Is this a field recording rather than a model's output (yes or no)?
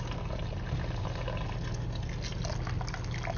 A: yes